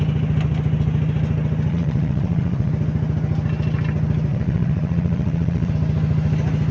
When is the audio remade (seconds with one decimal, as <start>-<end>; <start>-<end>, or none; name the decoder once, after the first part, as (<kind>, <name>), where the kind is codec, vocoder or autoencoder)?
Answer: 1.7-2.7 (vocoder, Vocos); 4.3-5.7